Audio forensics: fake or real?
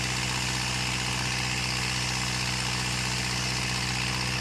real